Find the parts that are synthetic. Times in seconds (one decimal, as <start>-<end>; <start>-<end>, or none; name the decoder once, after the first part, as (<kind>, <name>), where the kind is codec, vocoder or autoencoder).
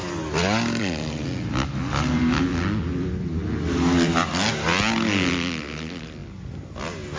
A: none